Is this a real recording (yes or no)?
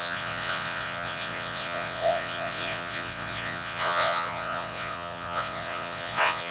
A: no